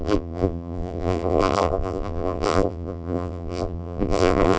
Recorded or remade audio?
remade